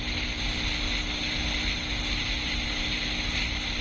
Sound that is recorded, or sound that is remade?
recorded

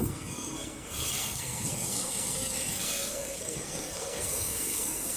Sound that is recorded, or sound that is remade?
remade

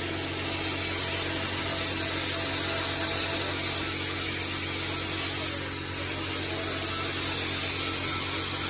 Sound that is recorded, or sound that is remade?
recorded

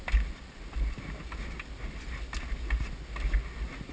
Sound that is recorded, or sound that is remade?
recorded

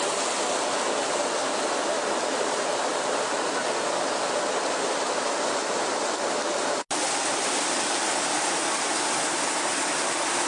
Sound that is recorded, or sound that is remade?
recorded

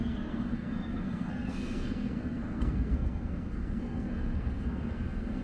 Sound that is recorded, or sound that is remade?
remade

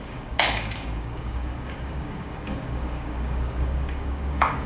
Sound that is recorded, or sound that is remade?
remade